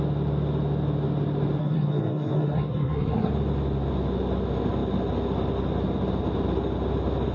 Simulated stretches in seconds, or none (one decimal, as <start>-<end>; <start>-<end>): 1.6-3.3